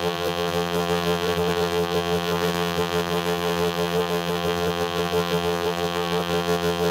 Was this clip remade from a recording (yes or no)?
yes